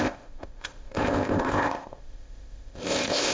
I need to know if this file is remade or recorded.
remade